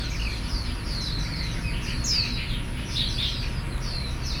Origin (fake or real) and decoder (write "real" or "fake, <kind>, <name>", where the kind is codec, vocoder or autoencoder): real